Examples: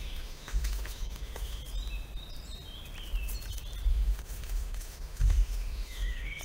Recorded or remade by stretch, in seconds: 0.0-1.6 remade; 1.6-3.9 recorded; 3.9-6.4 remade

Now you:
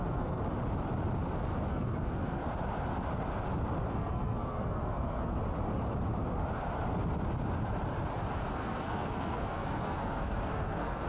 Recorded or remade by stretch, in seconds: 0.0-0.4 remade; 0.4-1.7 recorded; 1.7-2.4 remade; 2.4-3.9 recorded; 3.9-5.3 remade; 5.3-8.5 recorded; 8.5-11.1 remade

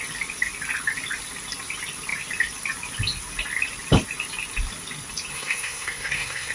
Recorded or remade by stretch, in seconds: 0.0-5.3 recorded; 5.3-6.5 remade

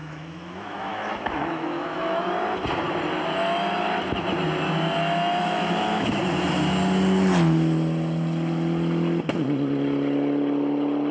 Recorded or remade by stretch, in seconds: 0.0-2.3 remade; 2.3-5.4 recorded; 5.4-6.2 remade; 6.2-11.1 recorded

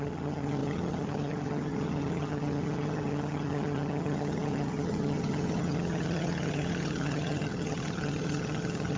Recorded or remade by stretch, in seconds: 0.0-9.0 remade

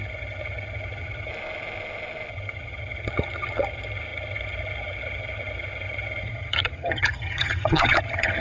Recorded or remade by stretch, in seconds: 0.0-1.3 remade; 1.3-2.3 recorded; 2.3-8.4 remade

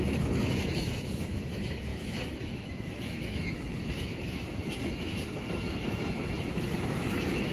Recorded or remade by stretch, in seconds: 0.0-7.5 remade

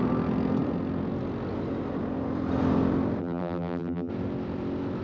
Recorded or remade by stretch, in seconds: 0.0-3.2 recorded; 3.2-4.1 remade; 4.1-5.0 recorded